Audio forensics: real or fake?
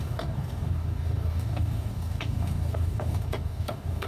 fake